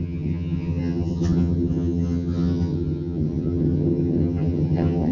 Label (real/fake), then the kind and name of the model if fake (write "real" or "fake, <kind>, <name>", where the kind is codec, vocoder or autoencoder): fake, vocoder, HiFi-GAN